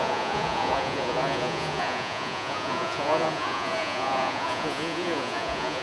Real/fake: fake